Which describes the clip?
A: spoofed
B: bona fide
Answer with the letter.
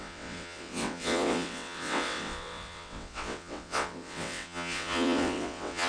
A